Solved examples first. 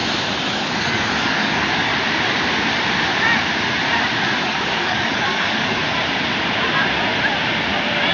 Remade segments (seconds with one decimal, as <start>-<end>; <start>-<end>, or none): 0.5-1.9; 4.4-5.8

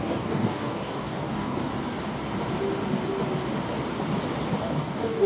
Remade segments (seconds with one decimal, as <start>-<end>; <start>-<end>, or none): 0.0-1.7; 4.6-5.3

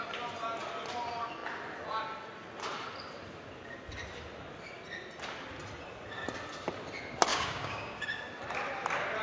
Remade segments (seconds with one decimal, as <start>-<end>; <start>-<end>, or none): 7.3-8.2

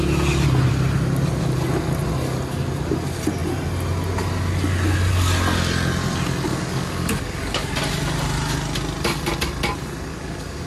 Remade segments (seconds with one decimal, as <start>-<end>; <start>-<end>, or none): 6.5-7.7; 10.1-10.7

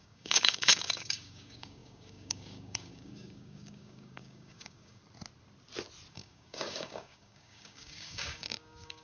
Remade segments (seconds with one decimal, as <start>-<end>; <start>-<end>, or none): 0.0-5.0; 6.1-9.0

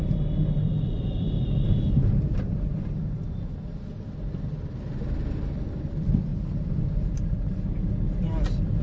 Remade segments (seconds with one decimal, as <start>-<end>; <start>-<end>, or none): none